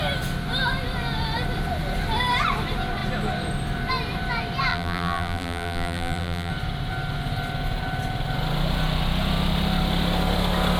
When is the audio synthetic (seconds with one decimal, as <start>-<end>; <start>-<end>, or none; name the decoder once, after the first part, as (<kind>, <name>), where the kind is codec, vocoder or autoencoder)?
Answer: 4.7-6.5 (vocoder, BigVGAN v2)